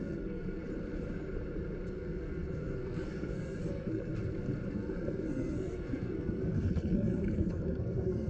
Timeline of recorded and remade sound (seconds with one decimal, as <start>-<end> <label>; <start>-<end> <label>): 0.0-0.6 remade; 0.6-1.9 recorded; 1.9-4.1 remade; 4.1-4.7 recorded; 4.7-8.3 remade